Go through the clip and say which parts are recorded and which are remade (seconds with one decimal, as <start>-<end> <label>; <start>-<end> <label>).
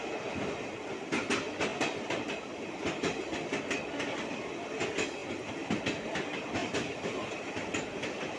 0.0-1.7 recorded; 1.7-4.5 remade; 4.5-5.2 recorded; 5.2-5.8 remade; 5.8-6.6 recorded; 6.6-7.5 remade; 7.5-8.4 recorded